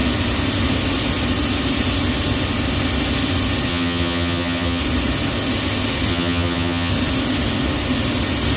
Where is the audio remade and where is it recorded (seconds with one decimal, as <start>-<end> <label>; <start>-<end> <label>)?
0.0-3.7 recorded; 3.7-4.8 remade; 4.8-6.1 recorded; 6.1-6.9 remade; 6.9-8.6 recorded